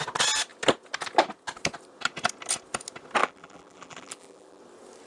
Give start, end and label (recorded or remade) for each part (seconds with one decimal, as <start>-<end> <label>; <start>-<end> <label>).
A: 0.0-3.2 recorded; 3.2-4.6 remade; 4.6-5.1 recorded